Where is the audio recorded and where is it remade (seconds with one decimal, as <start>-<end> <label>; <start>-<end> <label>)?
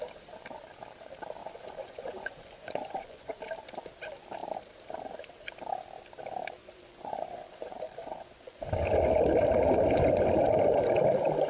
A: 0.0-1.4 recorded; 1.4-3.3 remade; 3.3-6.6 recorded; 6.6-8.6 remade; 8.6-11.5 recorded